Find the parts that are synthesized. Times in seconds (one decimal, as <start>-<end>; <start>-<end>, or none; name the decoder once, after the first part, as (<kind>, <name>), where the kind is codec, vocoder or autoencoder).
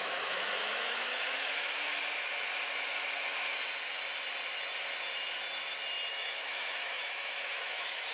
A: 0.0-1.9 (autoencoder, DAC-VAE); 6.1-8.1